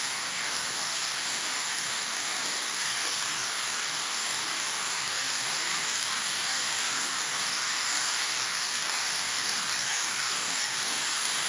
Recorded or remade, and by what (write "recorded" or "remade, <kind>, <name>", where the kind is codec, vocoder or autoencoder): remade, codec, DAC